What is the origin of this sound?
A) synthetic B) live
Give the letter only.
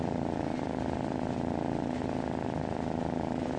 B